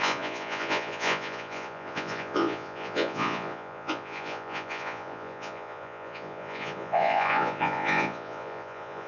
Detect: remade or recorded remade